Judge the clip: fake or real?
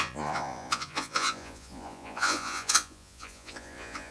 fake